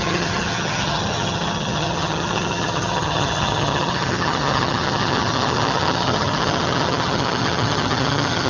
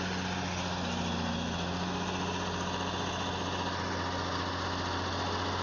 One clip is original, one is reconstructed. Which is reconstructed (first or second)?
first